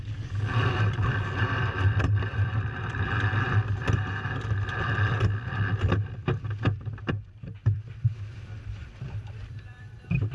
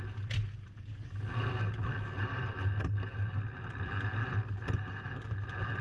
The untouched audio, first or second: second